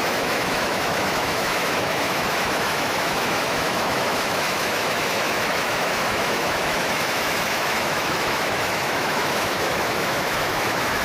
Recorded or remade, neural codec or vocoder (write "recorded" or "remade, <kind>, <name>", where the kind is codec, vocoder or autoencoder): remade, autoencoder, DAC-VAE